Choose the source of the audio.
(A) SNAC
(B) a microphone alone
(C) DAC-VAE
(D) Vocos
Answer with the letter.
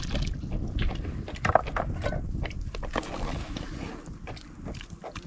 B